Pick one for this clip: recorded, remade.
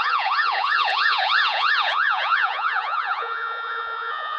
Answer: remade